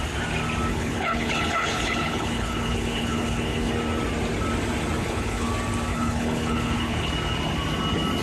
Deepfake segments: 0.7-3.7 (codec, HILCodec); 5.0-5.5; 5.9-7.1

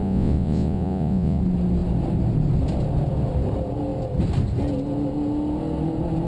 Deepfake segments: 0.0-1.4 (vocoder, Vocos)

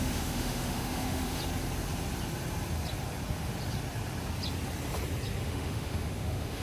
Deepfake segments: 0.0-1.4 (autoencoder, DAC-VAE); 5.4-6.6

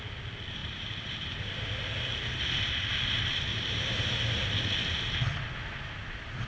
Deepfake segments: 0.6-1.5 (vocoder, BigVGAN v2); 3.5-4.4

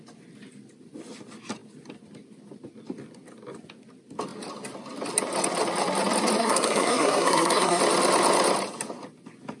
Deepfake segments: 6.4-7.8 (codec, SNAC)

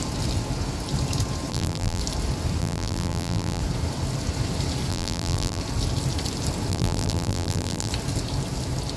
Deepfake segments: 1.5-2.0 (vocoder, BigVGAN v2); 2.6-3.6; 4.9-5.6; 6.7-7.9

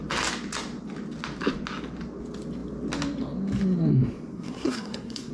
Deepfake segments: 4.3-5.3 (codec, SNAC)

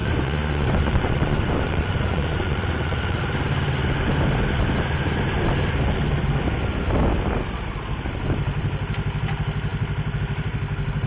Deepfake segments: 0.0-3.2 (vocoder, Vocos)